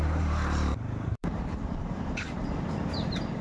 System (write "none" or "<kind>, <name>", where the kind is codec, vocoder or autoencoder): vocoder, BigVGAN v2